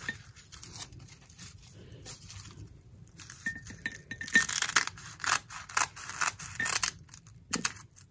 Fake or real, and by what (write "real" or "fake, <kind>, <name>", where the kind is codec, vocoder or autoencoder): real